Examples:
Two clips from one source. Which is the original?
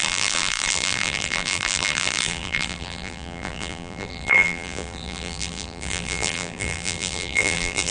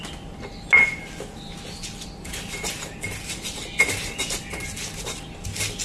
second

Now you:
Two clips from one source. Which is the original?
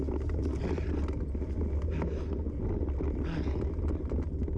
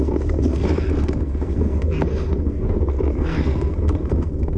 first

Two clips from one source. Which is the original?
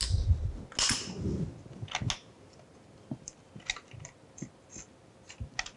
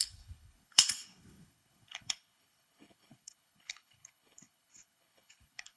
first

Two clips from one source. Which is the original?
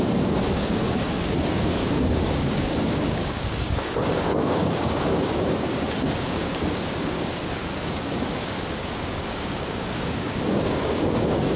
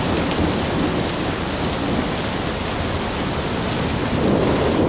second